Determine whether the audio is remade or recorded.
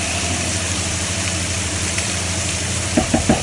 remade